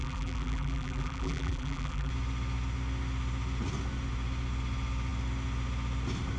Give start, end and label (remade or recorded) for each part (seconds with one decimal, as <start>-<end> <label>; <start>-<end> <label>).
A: 0.0-2.1 remade; 2.1-6.4 recorded

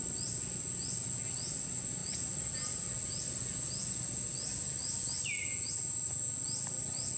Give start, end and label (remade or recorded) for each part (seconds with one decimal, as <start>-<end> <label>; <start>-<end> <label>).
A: 0.0-7.2 recorded

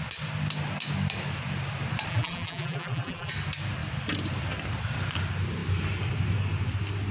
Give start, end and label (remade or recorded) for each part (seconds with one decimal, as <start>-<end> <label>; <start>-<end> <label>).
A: 0.0-2.1 recorded; 2.1-3.3 remade; 3.3-7.1 recorded

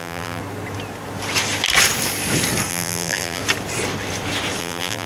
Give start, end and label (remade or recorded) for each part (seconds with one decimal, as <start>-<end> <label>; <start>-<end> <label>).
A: 0.0-0.4 remade; 0.4-2.7 recorded; 2.7-3.4 remade; 3.4-4.6 recorded; 4.6-5.1 remade

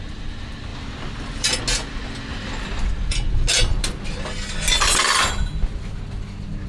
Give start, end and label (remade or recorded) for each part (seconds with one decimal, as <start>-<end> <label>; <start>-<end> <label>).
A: 0.0-0.7 recorded; 0.7-1.6 remade; 1.6-2.3 recorded; 2.3-2.9 remade; 2.9-6.7 recorded

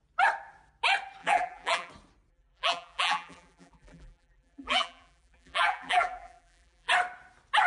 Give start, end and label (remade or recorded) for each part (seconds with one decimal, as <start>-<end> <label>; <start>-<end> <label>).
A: 0.0-1.2 recorded; 1.2-1.9 remade; 1.9-2.3 recorded; 2.3-6.9 remade; 6.9-7.7 recorded

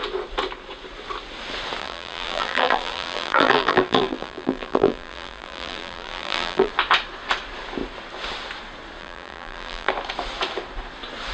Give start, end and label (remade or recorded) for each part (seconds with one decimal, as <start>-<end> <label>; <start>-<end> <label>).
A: 0.0-1.8 recorded; 1.8-6.7 remade; 6.7-9.0 recorded; 9.0-9.9 remade; 9.9-11.3 recorded

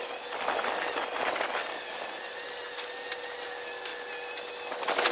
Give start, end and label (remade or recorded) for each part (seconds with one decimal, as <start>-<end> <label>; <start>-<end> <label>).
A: 0.0-5.1 recorded